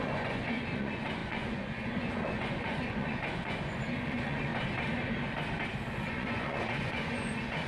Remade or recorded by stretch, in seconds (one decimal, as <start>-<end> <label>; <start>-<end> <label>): 0.0-4.5 remade; 4.5-6.1 recorded; 6.1-7.7 remade